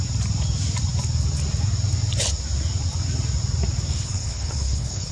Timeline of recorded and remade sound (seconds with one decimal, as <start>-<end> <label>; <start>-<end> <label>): 0.0-3.9 recorded; 3.9-5.1 remade